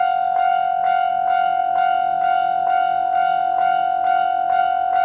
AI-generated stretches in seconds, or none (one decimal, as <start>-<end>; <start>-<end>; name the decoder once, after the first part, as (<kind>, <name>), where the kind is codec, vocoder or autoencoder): none